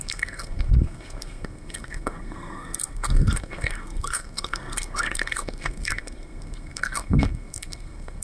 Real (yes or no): no